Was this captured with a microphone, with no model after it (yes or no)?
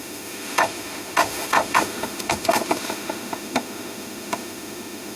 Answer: no